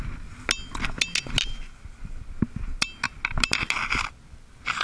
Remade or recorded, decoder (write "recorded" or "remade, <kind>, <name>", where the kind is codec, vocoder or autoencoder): recorded